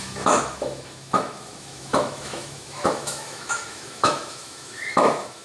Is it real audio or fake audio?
fake